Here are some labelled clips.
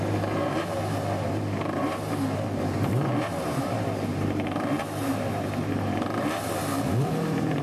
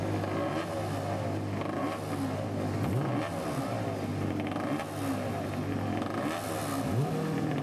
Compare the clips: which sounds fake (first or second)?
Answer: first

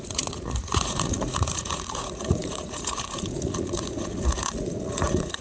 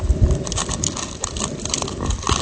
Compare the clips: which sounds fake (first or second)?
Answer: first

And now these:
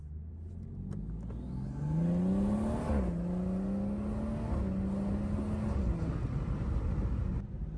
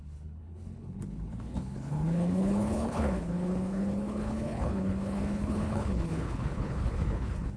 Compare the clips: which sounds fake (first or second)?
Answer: second